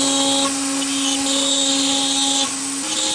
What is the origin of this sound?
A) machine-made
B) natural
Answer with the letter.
B